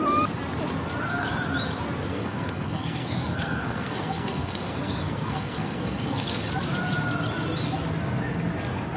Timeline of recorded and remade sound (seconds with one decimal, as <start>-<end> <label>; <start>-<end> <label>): 0.0-2.1 recorded; 2.1-6.5 remade; 6.5-9.0 recorded